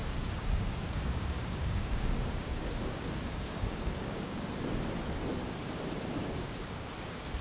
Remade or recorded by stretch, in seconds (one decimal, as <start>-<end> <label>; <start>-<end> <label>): 0.0-4.4 remade; 4.4-6.2 recorded; 6.2-6.9 remade; 6.9-7.4 recorded